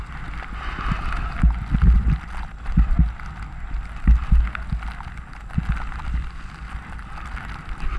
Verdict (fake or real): real